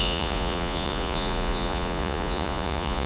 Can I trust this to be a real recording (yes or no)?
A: no